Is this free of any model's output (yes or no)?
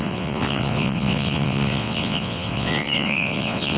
no